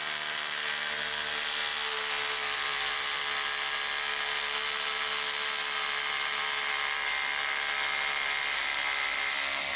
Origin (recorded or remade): recorded